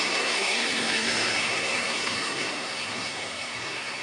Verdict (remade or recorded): remade